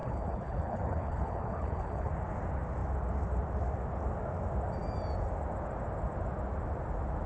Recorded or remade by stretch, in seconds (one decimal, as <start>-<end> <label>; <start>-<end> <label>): 0.0-2.1 remade; 2.1-7.3 recorded